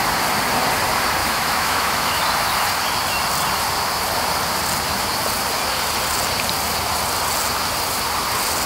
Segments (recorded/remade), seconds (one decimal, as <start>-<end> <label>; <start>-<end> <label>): 0.0-1.2 recorded; 1.2-2.2 remade; 2.2-8.7 recorded

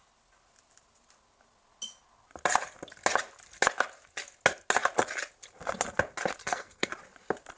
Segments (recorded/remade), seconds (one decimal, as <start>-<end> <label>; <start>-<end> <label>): 0.0-6.4 recorded; 6.4-6.9 remade; 6.9-7.6 recorded

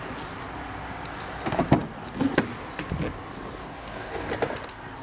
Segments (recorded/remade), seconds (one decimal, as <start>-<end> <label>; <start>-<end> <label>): 0.0-3.6 recorded; 3.6-4.3 remade; 4.3-5.0 recorded

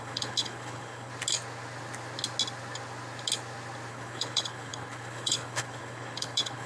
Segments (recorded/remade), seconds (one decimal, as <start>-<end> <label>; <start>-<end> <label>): 0.0-1.1 remade; 1.1-3.9 recorded; 3.9-6.7 remade

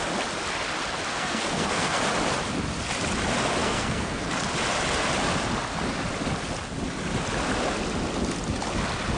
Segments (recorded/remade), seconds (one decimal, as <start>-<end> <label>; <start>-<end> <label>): 0.0-1.1 recorded; 1.1-2.0 remade; 2.0-3.6 recorded; 3.6-4.3 remade; 4.3-9.2 recorded

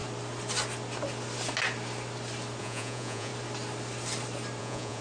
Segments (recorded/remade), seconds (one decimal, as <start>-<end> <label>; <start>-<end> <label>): 0.0-2.6 recorded; 2.6-3.3 remade; 3.3-4.6 recorded; 4.6-5.0 remade